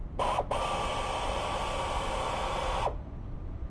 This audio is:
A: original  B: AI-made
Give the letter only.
A